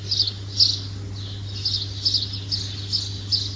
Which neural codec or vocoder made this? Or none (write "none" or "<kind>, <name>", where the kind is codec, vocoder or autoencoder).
none